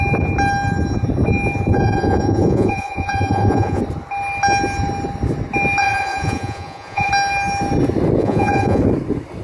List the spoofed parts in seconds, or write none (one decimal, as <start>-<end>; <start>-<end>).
1.7-3.8; 5.8-7.1; 8.2-8.8